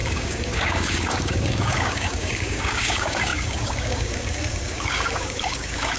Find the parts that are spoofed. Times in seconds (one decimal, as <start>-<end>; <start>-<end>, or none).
0.0-6.0

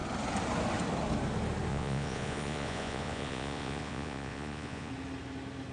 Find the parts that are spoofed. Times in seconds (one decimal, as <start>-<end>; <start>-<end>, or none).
1.7-4.9